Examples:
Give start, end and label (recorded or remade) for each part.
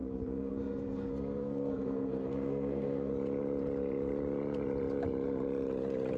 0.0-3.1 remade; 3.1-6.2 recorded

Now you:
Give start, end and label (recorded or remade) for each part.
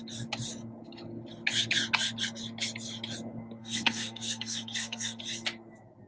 0.0-3.6 recorded; 3.6-5.2 remade; 5.2-6.1 recorded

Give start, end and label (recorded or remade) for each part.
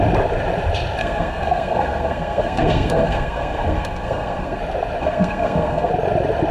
0.0-1.0 recorded; 1.0-4.6 remade; 4.6-5.0 recorded; 5.0-5.9 remade; 5.9-6.5 recorded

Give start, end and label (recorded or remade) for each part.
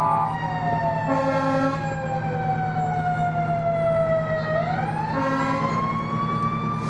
0.0-6.9 recorded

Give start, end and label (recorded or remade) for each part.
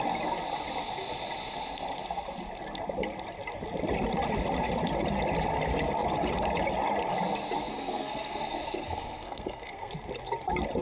0.0-7.7 recorded; 7.7-9.9 remade; 9.9-10.8 recorded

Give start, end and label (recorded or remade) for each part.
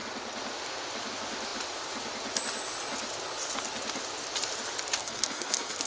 0.0-5.0 recorded; 5.0-5.9 remade